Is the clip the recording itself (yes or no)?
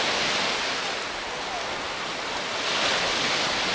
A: yes